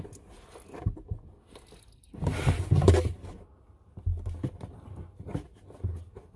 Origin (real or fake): real